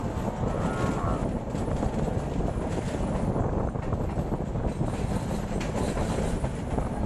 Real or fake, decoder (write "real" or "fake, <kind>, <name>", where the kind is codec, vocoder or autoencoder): real